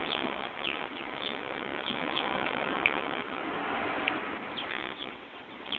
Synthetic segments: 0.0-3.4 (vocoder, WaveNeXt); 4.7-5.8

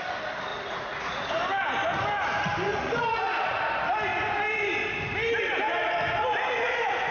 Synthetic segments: 0.5-1.3 (vocoder, Vocos); 2.7-3.6

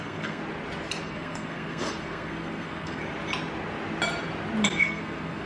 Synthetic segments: 0.0-0.4 (codec, SNAC); 1.0-3.0; 4.8-5.5